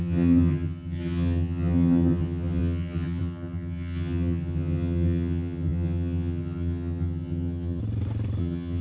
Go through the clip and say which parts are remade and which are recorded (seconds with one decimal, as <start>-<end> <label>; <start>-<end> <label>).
0.0-7.8 remade; 7.8-8.4 recorded; 8.4-8.8 remade

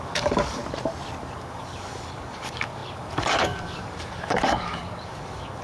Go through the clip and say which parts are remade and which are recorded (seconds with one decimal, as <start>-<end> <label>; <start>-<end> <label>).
0.0-0.6 remade; 0.6-1.2 recorded; 1.2-5.6 remade

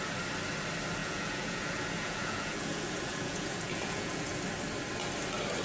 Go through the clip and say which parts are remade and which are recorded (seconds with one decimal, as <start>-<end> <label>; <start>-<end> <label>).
0.0-1.0 recorded; 1.0-4.4 remade; 4.4-5.6 recorded

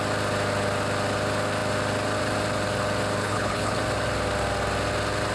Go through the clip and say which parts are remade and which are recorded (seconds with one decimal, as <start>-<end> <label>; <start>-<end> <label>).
0.0-3.2 recorded; 3.2-3.8 remade; 3.8-5.3 recorded

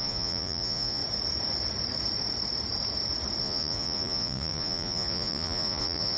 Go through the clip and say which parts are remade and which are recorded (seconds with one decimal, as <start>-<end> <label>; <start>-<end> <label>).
0.0-1.0 remade; 1.0-3.4 recorded; 3.4-6.2 remade